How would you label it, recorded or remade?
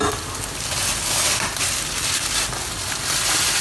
recorded